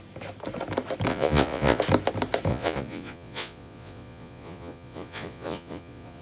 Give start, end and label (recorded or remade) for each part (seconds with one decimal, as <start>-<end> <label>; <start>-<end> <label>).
0.0-1.1 recorded; 1.1-1.8 remade; 1.8-2.5 recorded; 2.5-6.2 remade